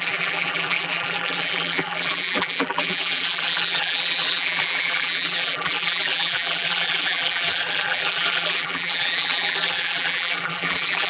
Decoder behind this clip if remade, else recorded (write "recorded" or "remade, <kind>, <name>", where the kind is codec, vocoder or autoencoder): remade, vocoder, BigVGAN v2